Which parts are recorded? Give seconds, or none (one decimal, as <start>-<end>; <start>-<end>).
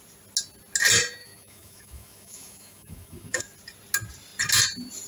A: 0.0-1.2; 3.4-5.1